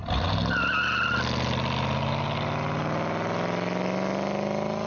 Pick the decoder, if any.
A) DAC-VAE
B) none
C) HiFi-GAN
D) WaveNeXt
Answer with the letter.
B